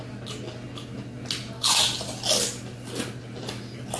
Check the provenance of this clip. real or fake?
real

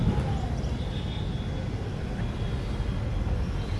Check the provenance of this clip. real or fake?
real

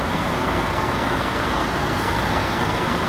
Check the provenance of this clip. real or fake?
fake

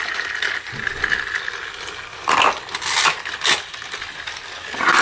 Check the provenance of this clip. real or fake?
real